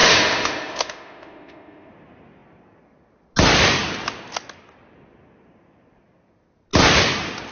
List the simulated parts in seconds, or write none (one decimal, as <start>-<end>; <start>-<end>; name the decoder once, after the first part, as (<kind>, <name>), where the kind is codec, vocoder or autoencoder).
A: 0.0-1.9 (autoencoder, DAC-VAE)